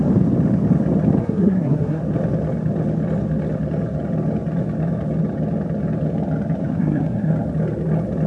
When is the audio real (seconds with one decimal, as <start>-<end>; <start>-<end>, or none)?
0.0-1.2; 2.0-6.6; 7.3-8.3